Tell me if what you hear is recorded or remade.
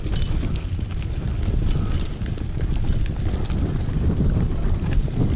recorded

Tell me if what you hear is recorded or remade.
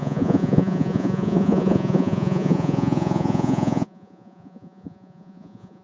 remade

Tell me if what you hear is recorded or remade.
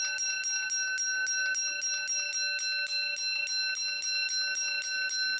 recorded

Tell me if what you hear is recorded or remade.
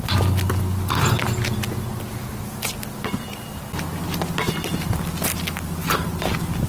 recorded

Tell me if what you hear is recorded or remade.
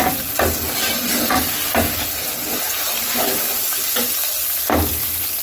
recorded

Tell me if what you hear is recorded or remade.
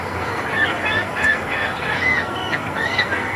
remade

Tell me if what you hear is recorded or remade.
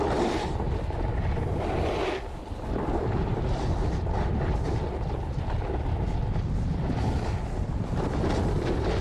recorded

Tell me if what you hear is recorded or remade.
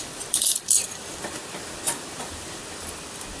remade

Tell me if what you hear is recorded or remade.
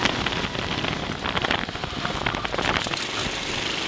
recorded